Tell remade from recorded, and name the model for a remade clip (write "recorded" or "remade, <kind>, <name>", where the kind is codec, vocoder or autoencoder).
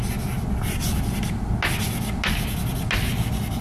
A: recorded